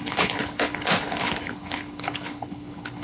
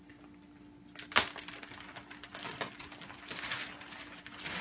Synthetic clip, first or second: first